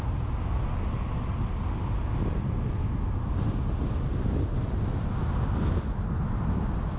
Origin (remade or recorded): recorded